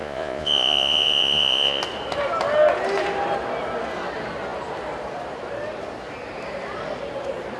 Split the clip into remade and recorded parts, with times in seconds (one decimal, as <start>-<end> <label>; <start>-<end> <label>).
0.0-1.8 remade; 1.8-7.6 recorded